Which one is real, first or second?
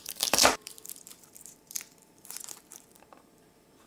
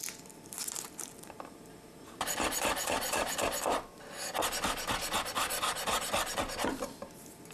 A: second